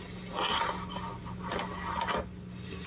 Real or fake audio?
real